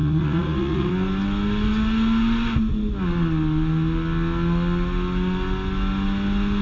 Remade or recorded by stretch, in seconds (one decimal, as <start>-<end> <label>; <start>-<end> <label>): 0.0-0.9 remade; 0.9-6.6 recorded